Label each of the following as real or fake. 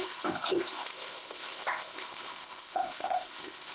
fake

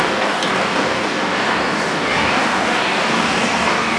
fake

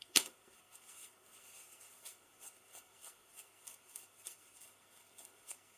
fake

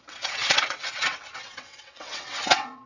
fake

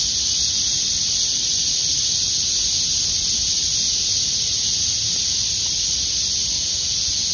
real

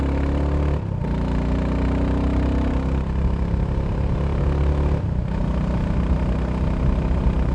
real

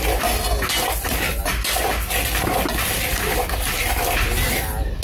real